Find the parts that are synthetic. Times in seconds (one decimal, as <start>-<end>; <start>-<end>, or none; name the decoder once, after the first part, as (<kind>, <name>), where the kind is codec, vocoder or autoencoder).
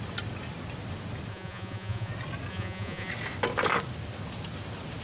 1.3-2.1 (vocoder, Vocos); 2.5-3.1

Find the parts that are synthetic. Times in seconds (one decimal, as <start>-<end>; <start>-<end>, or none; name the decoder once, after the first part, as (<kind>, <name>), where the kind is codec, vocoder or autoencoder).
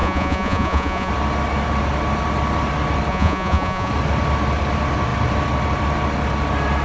0.0-1.1 (vocoder, Vocos); 3.1-3.9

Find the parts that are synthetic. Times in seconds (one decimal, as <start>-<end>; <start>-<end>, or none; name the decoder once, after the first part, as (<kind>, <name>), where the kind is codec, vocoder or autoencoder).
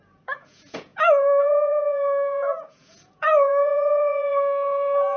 0.0-5.2 (vocoder, Vocos)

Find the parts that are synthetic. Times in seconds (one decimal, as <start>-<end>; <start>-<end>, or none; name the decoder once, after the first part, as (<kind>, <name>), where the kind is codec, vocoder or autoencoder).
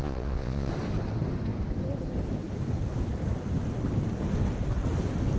0.0-0.7 (vocoder, Vocos)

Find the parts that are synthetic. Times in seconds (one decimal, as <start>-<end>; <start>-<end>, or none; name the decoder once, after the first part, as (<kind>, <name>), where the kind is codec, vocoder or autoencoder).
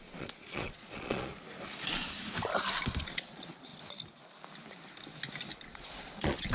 0.0-1.3 (vocoder, Vocos); 3.0-3.7; 5.7-6.5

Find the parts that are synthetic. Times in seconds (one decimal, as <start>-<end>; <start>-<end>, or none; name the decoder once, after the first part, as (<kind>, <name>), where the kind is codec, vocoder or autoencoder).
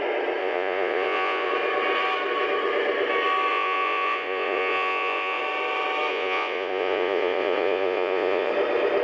0.4-1.5 (vocoder, Vocos); 3.5-5.4; 6.1-8.5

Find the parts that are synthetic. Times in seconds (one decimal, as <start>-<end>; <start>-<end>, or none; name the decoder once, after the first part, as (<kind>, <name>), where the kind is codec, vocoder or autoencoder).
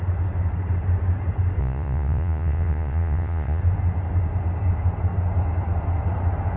1.6-3.6 (vocoder, Vocos)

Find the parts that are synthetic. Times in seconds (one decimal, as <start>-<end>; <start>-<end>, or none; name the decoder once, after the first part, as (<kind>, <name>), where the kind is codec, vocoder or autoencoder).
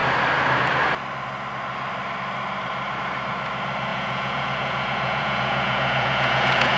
3.9-6.8 (vocoder, Vocos)